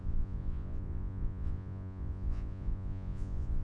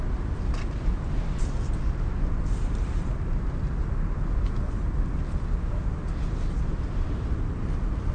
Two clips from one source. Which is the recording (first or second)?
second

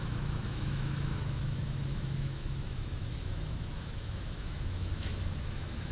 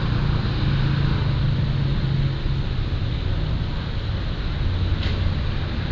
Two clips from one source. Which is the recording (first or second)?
second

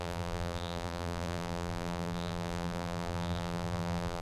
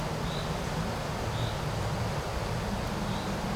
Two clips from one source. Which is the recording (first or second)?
second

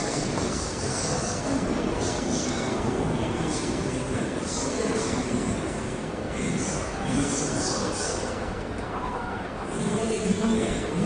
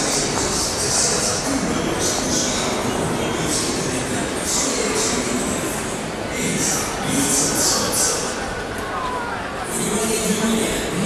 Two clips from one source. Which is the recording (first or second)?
second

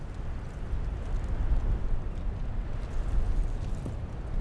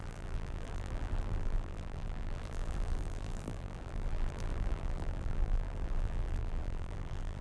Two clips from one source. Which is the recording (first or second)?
first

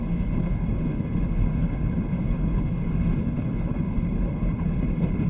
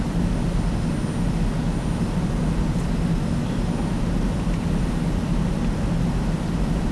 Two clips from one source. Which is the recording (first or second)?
second